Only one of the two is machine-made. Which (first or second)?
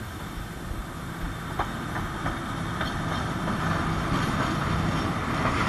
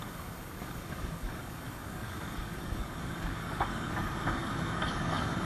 second